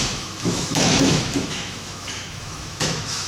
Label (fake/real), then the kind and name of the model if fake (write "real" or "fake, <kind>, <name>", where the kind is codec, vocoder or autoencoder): fake, autoencoder, DAC-VAE